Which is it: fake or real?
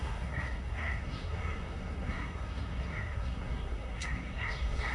fake